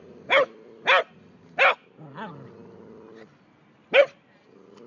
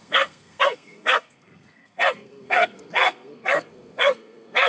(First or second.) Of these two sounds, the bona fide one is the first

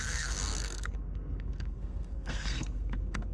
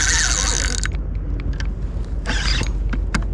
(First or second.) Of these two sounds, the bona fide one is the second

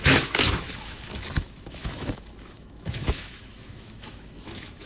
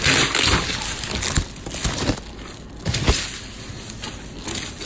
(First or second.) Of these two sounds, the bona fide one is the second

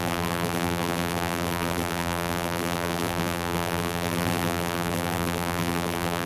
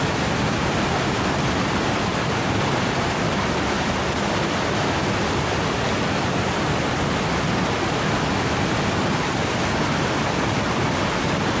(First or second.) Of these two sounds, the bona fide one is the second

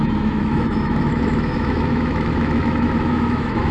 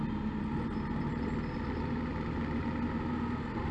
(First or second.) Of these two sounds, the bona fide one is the second